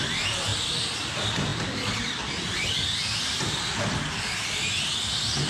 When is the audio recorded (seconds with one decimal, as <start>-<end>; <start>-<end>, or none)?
0.5-1.1